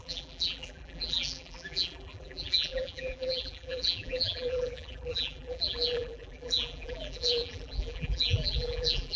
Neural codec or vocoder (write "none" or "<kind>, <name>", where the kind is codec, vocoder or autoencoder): vocoder, BigVGAN v2